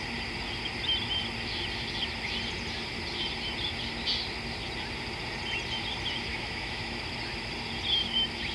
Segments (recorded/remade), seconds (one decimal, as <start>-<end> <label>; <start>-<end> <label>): 0.0-6.3 recorded; 6.3-7.0 remade; 7.0-8.5 recorded